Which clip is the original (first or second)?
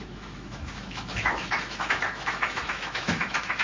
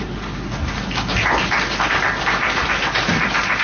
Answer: second